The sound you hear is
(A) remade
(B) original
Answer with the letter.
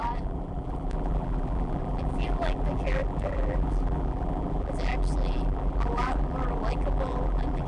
A